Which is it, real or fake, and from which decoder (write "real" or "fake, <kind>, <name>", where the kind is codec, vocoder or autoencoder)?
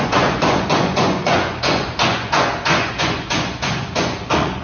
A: fake, vocoder, Vocos